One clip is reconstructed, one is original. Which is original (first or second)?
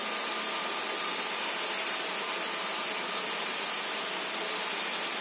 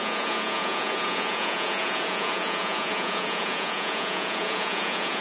first